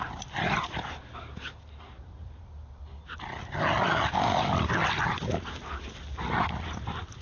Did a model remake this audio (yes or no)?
no